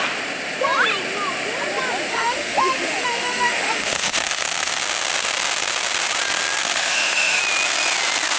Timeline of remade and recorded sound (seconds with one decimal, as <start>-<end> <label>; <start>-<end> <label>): 0.0-2.1 recorded; 2.1-4.8 remade; 4.8-6.6 recorded; 6.6-7.4 remade; 7.4-8.4 recorded